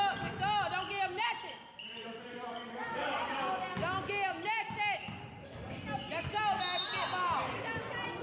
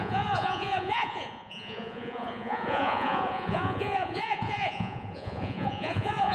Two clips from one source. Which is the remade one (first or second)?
second